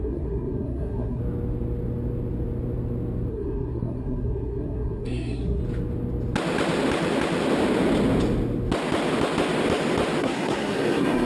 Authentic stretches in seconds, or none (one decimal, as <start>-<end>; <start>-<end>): 1.2-3.3; 5.6-10.2